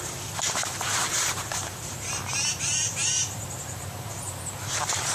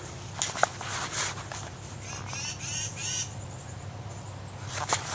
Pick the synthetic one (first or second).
first